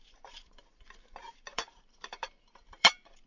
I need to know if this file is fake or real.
fake